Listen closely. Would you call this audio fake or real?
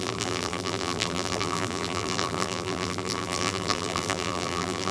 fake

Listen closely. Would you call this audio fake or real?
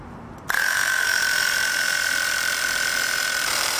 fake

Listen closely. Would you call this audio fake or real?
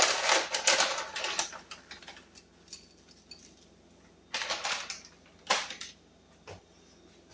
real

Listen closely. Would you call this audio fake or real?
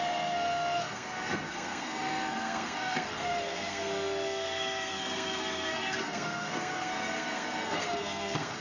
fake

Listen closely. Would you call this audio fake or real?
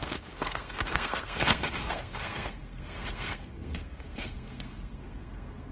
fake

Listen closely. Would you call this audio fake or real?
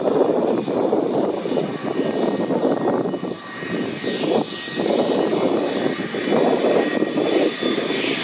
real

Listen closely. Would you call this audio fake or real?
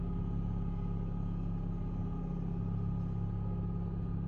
real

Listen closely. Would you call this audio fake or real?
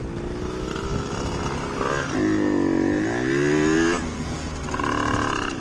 real